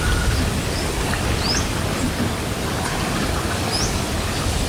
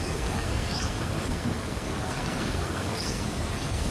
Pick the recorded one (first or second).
first